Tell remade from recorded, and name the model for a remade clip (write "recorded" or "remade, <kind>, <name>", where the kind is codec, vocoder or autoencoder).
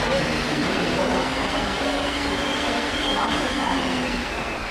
remade, codec, SNAC